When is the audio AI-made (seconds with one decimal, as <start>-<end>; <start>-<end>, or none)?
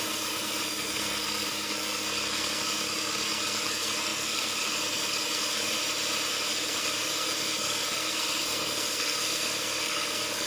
0.0-5.8; 6.3-10.5